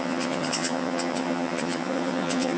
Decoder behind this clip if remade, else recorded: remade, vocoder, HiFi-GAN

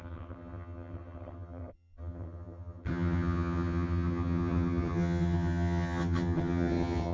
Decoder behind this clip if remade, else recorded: remade, vocoder, HiFi-GAN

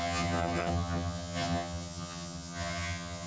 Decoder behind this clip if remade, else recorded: remade, vocoder, HiFi-GAN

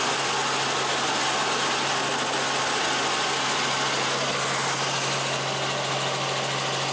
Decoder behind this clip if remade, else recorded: recorded